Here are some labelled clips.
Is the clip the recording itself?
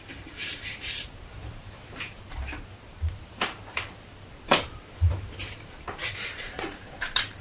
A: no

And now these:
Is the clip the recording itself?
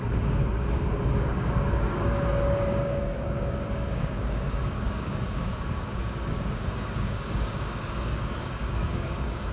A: no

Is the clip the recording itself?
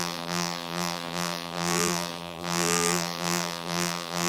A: no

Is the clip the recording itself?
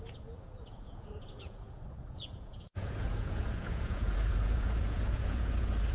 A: no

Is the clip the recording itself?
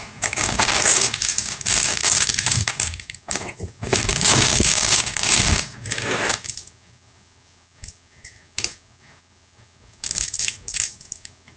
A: no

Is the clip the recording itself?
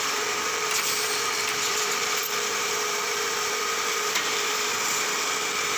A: no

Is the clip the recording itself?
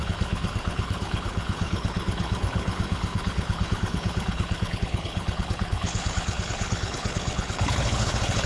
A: no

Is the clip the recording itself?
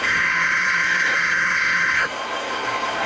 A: no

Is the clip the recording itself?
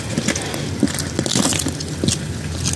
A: yes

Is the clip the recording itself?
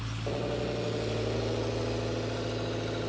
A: yes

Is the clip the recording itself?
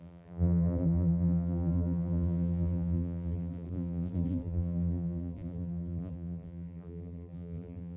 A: no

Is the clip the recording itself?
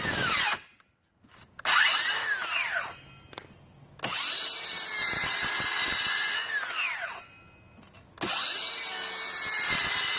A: yes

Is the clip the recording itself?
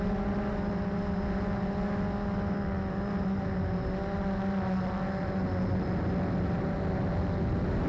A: yes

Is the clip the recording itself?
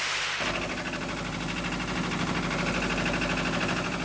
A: yes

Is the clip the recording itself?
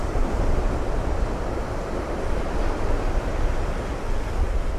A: yes